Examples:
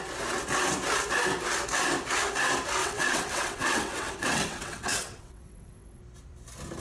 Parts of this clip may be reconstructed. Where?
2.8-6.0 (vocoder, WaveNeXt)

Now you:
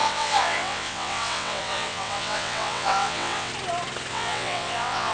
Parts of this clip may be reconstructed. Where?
0.0-3.5 (vocoder, WaveNeXt); 4.1-5.1

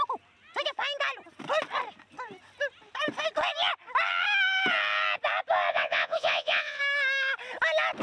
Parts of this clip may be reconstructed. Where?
5.7-6.8 (vocoder, WaveNeXt)

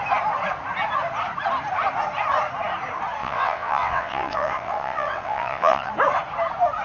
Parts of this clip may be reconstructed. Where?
3.2-5.9 (vocoder, WaveNeXt)

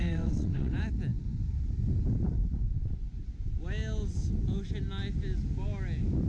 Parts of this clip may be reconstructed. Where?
0.0-0.7 (vocoder, WaveNeXt)

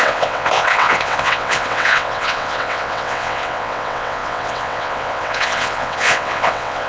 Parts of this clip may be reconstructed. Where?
0.0-6.9 (vocoder, WaveNeXt)

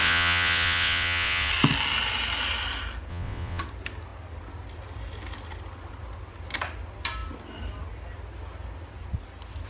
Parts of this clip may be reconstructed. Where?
0.0-1.5 (vocoder, WaveNeXt); 3.1-3.6